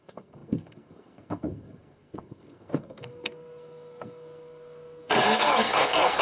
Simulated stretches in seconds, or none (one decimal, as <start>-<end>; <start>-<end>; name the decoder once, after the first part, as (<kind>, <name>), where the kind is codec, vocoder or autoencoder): 0.0-6.2 (codec, SNAC)